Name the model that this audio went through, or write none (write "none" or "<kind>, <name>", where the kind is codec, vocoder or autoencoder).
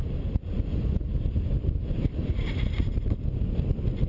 none